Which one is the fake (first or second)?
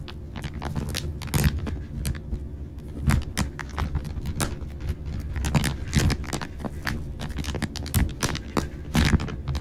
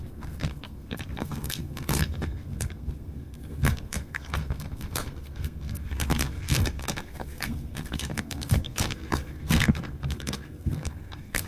second